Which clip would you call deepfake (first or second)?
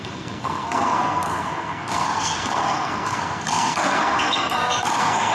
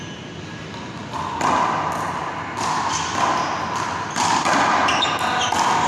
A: first